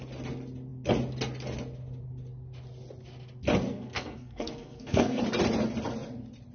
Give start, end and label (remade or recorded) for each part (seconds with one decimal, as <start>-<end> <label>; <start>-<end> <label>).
0.0-3.7 recorded; 3.7-5.2 remade; 5.2-6.5 recorded